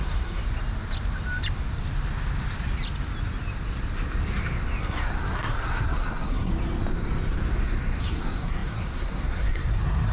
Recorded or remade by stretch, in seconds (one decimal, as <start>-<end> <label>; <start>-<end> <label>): 0.0-0.4 remade; 0.4-4.8 recorded; 4.8-6.5 remade; 6.5-8.0 recorded; 8.0-10.1 remade